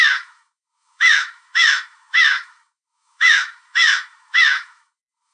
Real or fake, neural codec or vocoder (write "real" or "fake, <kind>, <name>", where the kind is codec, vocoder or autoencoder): fake, autoencoder, DAC-VAE